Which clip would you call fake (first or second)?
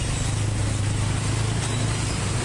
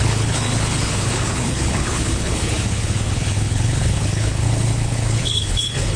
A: second